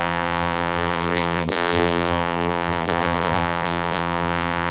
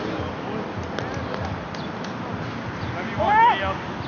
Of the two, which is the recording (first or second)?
second